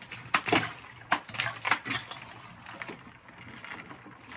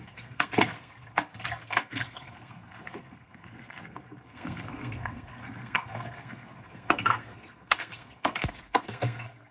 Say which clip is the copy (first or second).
second